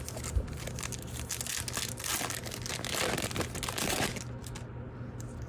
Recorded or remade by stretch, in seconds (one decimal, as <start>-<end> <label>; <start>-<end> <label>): 0.0-5.5 recorded